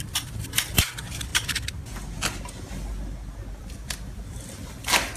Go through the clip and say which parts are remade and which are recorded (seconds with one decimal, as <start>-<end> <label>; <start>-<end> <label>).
0.0-1.3 remade; 1.3-3.6 recorded; 3.6-5.2 remade

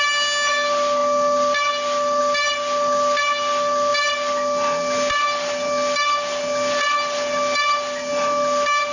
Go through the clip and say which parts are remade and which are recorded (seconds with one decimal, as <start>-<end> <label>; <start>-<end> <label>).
0.0-8.9 recorded

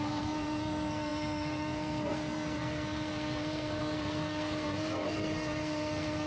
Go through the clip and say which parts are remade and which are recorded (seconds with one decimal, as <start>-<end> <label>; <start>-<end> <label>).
0.0-6.3 remade

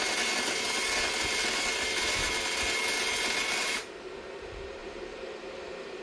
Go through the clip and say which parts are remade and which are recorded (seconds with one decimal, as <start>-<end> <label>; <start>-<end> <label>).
0.0-3.4 recorded; 3.4-4.1 remade; 4.1-4.8 recorded; 4.8-6.0 remade

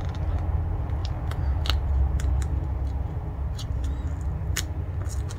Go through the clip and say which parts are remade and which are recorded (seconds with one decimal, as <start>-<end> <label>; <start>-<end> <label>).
0.0-5.4 recorded